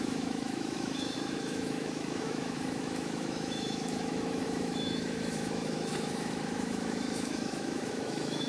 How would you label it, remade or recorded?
remade